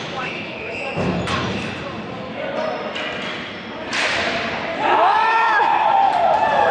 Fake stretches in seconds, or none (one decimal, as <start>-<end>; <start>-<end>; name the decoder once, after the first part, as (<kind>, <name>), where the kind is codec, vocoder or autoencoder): 0.0-0.9 (autoencoder, DAC-VAE); 4.9-5.7